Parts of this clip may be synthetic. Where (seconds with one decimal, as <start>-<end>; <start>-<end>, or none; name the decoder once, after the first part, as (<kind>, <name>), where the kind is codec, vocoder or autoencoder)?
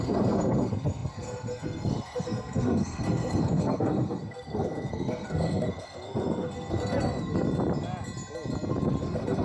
0.0-7.3 (codec, SNAC); 9.0-9.4